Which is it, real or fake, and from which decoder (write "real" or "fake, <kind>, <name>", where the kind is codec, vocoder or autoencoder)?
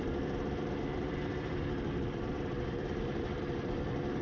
fake, vocoder, BigVGAN v2